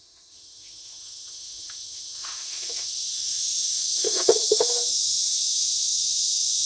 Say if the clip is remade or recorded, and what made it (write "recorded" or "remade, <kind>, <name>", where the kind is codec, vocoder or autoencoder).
remade, autoencoder, DAC-VAE